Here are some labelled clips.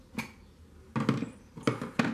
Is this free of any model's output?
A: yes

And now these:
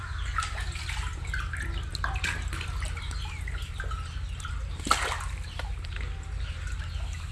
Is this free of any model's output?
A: yes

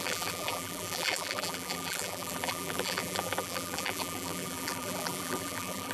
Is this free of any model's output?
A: no